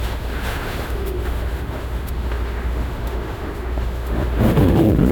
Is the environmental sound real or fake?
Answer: fake